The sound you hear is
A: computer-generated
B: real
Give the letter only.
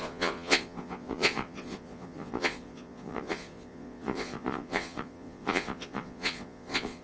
A